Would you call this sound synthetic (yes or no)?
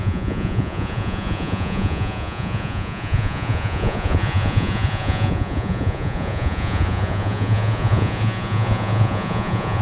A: yes